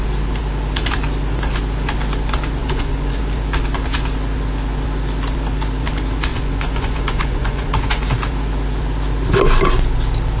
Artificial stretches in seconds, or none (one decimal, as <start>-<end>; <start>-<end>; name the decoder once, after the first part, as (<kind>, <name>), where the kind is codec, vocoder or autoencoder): 2.6-3.2 (vocoder, Vocos); 6.3-8.1